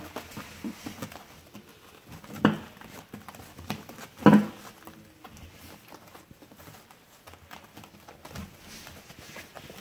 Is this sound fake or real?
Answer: real